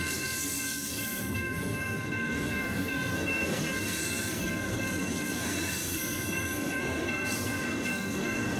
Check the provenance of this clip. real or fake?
fake